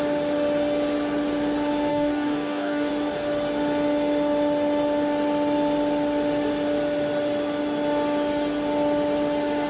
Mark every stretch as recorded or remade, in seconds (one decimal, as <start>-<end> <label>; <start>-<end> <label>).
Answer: 0.0-1.9 recorded; 1.9-2.9 remade; 2.9-9.7 recorded